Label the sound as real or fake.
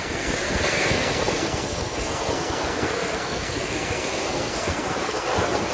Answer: fake